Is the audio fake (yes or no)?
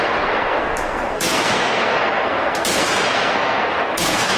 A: yes